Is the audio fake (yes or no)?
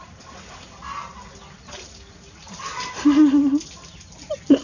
no